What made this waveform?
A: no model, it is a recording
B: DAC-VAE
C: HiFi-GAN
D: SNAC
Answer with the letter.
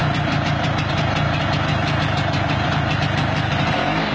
A